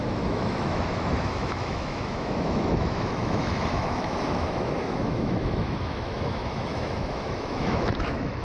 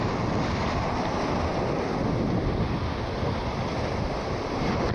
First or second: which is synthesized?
first